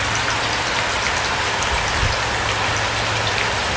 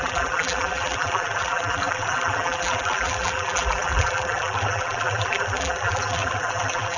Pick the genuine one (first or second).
first